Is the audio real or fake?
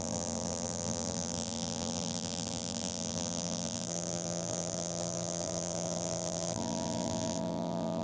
fake